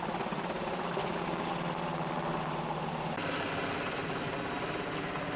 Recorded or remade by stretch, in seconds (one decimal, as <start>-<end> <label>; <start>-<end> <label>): 0.0-1.0 recorded; 1.0-1.5 remade; 1.5-5.4 recorded